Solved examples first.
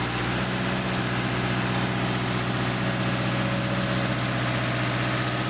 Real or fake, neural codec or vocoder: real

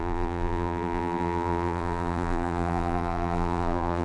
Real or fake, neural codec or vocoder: fake, vocoder, BigVGAN v2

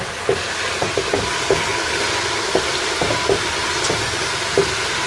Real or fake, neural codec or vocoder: fake, vocoder, BigVGAN v2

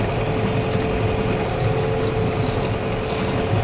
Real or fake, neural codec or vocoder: real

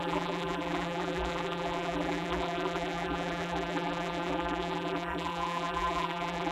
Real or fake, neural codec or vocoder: fake, vocoder, BigVGAN v2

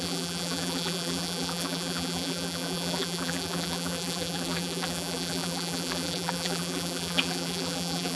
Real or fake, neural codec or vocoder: fake, vocoder, BigVGAN v2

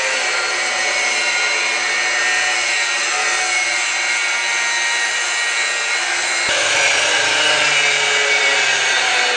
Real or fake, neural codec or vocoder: fake, vocoder, BigVGAN v2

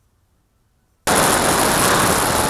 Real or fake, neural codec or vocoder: real